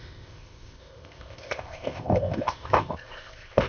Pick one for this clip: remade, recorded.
remade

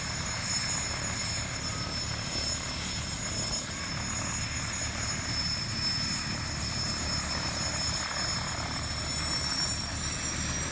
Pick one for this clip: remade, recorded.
recorded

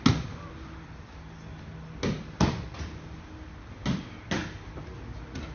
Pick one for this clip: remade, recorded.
recorded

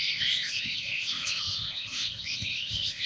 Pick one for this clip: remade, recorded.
remade